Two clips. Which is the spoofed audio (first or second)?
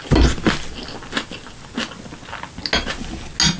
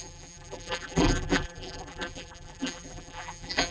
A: second